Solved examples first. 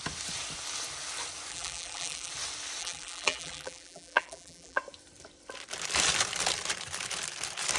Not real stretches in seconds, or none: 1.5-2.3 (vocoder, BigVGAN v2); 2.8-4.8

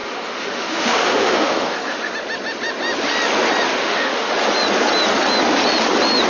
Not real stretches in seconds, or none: 0.0-2.1 (autoencoder, DAC-VAE); 3.8-4.3

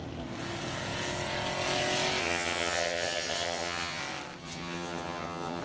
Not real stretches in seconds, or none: 2.2-4.0 (vocoder, HiFi-GAN); 4.4-5.6

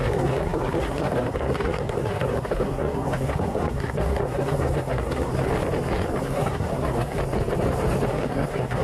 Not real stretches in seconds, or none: 0.0-5.3 (codec, SNAC); 6.2-7.2; 8.1-8.8

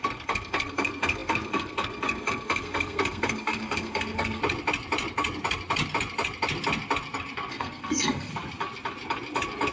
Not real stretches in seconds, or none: 0.0-4.4 (codec, SNAC); 7.5-8.3

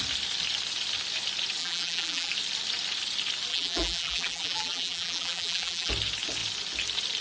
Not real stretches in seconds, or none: 1.6-2.3 (vocoder, BigVGAN v2); 3.5-5.9

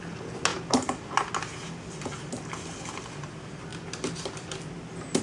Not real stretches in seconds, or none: none

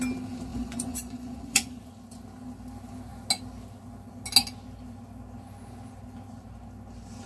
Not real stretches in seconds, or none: 0.5-1.9 (vocoder, Vocos)